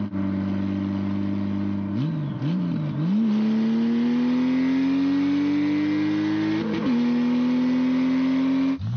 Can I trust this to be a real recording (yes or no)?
yes